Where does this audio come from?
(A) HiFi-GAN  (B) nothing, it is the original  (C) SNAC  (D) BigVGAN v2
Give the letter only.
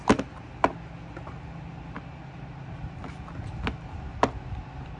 B